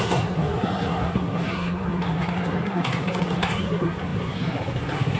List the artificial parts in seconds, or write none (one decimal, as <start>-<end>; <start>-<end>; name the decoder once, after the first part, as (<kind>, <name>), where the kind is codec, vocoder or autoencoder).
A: 0.0-5.2 (codec, SNAC)